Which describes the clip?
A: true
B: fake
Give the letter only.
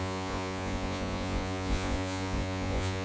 B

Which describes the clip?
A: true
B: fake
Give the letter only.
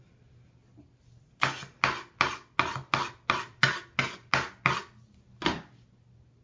A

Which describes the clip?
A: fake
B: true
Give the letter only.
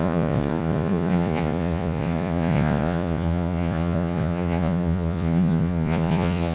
A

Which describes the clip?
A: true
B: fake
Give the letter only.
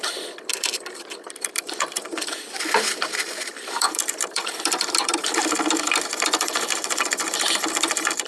B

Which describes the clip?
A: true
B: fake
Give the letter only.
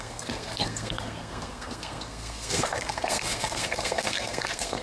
B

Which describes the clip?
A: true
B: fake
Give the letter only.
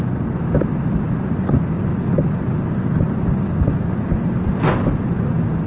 A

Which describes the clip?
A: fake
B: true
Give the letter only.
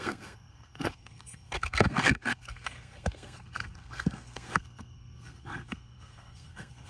A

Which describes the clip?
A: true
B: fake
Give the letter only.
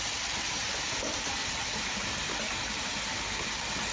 A